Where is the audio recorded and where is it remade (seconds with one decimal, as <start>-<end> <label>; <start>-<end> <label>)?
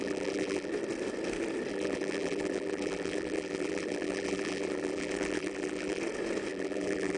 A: 0.0-0.7 remade; 0.7-1.7 recorded; 1.7-6.0 remade; 6.0-6.5 recorded; 6.5-7.2 remade